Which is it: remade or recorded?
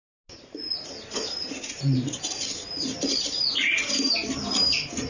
recorded